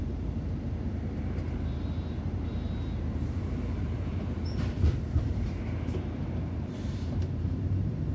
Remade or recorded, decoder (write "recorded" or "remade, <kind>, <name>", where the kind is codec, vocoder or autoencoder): remade, vocoder, BigVGAN v2